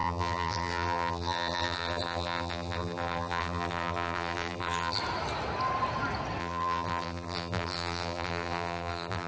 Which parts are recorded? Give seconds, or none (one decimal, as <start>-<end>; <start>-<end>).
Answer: 5.0-6.4